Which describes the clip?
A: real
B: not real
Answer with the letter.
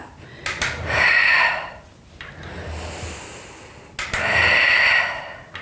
A